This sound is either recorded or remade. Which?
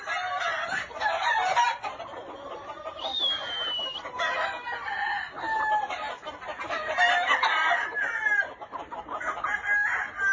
recorded